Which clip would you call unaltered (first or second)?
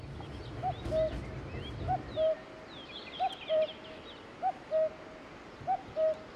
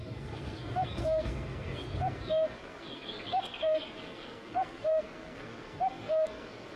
first